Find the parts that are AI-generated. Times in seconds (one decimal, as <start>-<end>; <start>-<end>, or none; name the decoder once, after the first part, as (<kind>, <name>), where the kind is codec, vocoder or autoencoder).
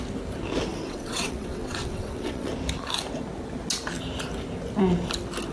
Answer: 0.7-2.5 (vocoder, WaveNeXt)